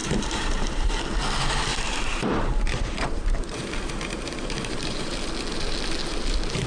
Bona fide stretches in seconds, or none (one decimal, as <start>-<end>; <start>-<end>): 0.9-1.7; 5.2-6.7

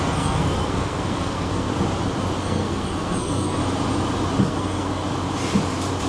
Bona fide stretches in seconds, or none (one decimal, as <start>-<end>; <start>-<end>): 1.7-2.4; 3.6-4.4; 5.0-6.1

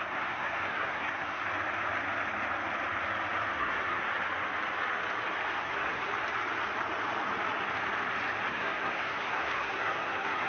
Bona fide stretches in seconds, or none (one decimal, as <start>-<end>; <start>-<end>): 1.4-3.6; 4.1-5.6; 6.1-8.5

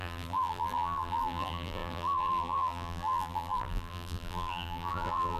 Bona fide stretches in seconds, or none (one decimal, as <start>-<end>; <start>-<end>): none

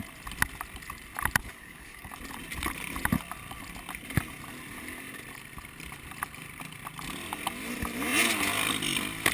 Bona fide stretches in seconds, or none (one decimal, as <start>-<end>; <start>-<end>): 0.0-1.4; 2.1-9.3

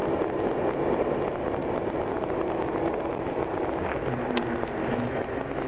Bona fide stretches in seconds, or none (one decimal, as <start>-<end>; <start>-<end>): 0.0-4.8